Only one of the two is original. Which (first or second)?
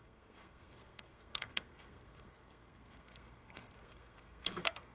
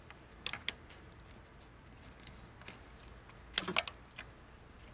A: second